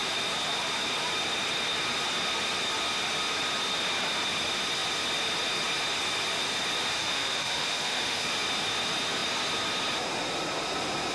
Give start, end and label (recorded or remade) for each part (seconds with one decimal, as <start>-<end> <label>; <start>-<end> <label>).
0.0-7.0 recorded; 7.0-8.3 remade; 8.3-11.1 recorded